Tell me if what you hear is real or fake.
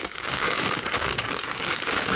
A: fake